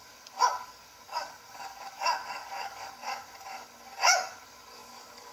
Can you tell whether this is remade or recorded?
remade